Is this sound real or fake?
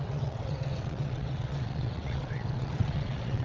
fake